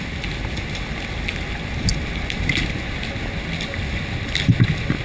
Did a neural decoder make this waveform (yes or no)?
no